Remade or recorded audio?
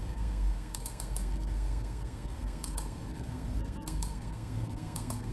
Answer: remade